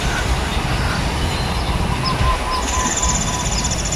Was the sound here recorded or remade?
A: recorded